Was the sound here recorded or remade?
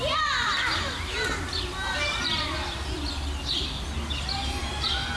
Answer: recorded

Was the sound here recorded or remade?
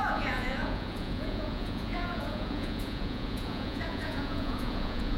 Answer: remade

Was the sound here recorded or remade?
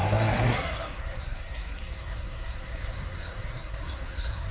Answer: remade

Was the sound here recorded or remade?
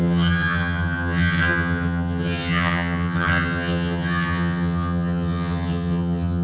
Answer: remade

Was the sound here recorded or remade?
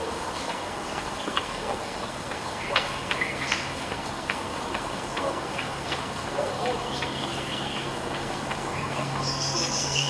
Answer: remade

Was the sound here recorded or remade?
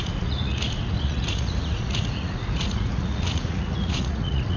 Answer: remade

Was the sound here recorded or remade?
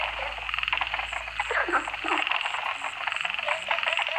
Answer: recorded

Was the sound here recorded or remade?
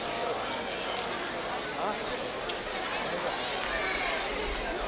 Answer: recorded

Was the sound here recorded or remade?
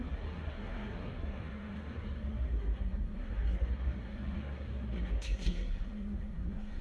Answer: remade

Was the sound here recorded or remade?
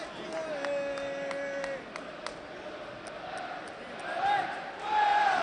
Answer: recorded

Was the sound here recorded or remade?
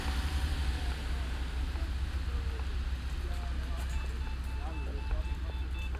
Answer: recorded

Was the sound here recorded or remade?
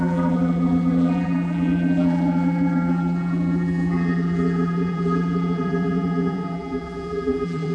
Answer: remade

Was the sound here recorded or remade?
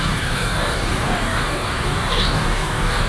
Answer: remade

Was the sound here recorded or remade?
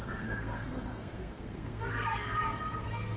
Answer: remade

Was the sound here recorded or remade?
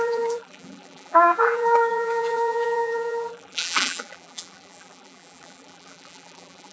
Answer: remade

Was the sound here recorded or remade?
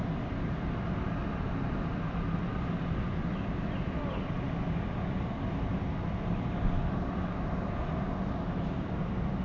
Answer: recorded